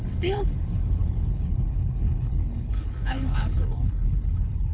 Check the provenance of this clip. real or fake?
fake